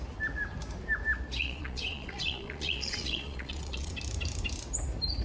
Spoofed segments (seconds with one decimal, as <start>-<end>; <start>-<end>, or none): 1.4-3.9